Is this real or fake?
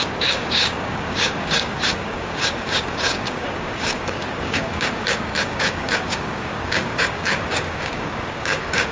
fake